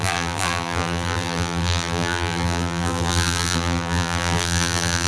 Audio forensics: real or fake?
fake